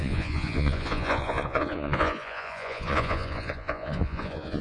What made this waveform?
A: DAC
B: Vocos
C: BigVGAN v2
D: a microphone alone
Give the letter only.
B